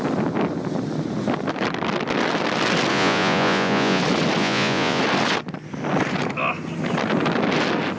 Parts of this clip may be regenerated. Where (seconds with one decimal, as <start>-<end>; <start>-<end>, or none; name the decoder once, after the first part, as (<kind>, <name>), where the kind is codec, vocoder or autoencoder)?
2.9-4.0 (vocoder, Vocos); 4.4-5.0